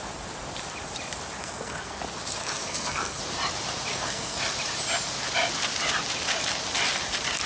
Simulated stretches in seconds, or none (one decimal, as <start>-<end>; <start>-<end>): 1.4-2.0; 2.4-3.2; 3.9-4.4